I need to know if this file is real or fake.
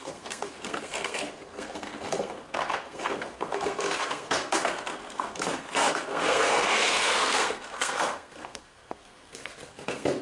fake